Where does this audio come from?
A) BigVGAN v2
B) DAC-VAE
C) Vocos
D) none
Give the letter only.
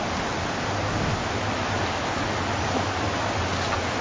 D